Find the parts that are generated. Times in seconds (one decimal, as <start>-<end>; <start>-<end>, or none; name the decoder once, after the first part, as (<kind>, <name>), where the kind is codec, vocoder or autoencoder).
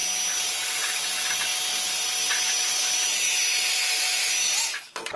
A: none